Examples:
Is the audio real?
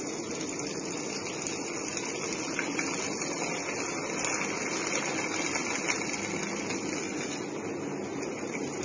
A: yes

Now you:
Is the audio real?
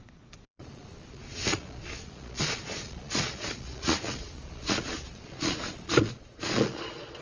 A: no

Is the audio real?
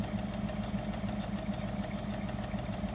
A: yes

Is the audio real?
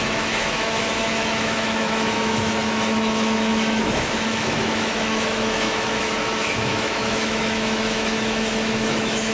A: no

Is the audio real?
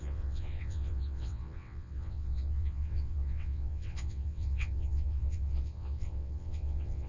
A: no